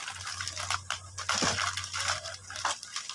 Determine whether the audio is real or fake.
real